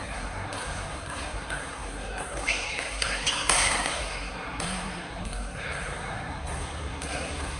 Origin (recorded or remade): remade